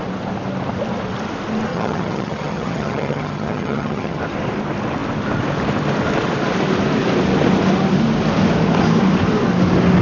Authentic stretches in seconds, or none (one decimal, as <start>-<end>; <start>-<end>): 0.0-1.7; 4.2-10.0

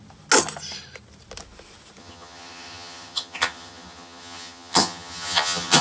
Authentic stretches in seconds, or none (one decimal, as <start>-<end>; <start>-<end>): 0.0-2.0